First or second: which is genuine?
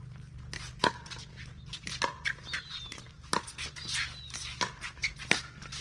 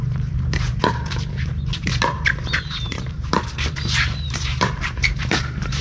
first